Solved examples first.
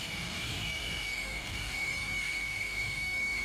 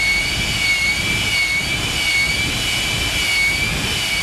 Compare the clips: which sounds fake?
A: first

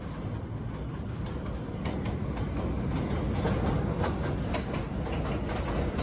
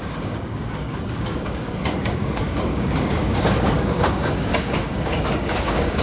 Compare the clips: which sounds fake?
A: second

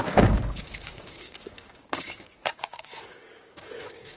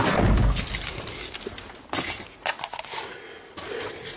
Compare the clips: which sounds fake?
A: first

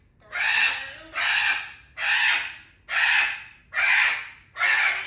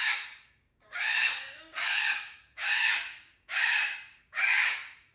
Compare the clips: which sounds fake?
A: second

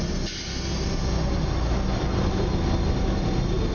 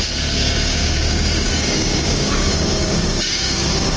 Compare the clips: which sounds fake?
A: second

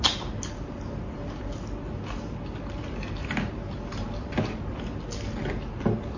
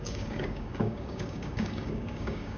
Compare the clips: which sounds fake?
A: second